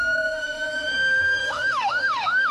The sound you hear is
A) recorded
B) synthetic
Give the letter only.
B